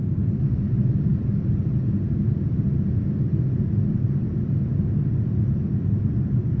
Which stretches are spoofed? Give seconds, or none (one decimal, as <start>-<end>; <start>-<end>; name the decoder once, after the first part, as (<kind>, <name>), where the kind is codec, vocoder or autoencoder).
none